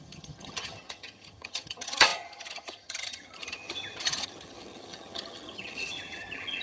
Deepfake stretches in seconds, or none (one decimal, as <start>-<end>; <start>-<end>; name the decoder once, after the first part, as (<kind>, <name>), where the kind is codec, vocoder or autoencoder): 0.0-6.6 (vocoder, HiFi-GAN)